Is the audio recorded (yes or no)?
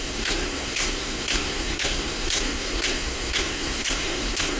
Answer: no